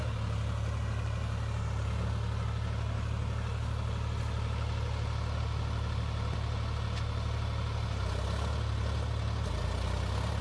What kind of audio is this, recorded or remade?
recorded